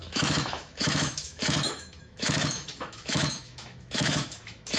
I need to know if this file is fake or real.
fake